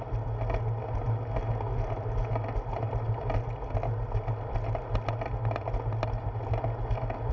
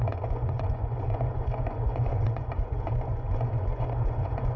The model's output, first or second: second